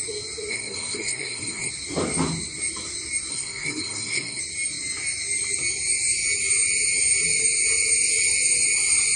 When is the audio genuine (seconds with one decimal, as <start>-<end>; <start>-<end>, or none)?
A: 0.0-0.5; 1.7-3.3; 4.4-9.2